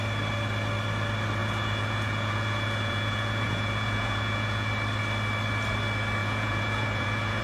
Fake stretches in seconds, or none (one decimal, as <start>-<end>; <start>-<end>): 1.4-4.7; 6.2-7.4